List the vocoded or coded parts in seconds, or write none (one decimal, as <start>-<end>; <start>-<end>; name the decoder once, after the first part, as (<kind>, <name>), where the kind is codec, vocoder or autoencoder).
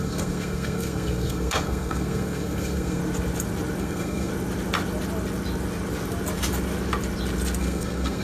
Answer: 0.0-3.0 (codec, SNAC); 3.8-4.3; 7.6-8.2